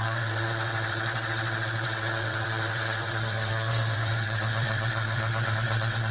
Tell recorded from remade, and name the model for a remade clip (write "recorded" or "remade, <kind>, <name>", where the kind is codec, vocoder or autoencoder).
remade, vocoder, WaveNeXt